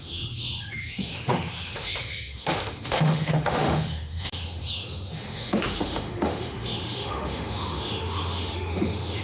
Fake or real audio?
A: fake